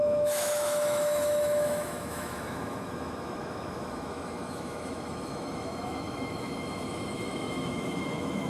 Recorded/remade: remade